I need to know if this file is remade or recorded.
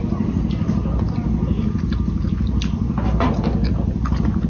recorded